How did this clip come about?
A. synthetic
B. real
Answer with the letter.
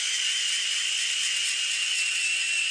B